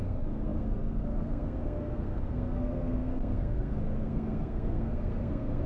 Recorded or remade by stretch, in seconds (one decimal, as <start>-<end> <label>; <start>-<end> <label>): 0.0-5.7 remade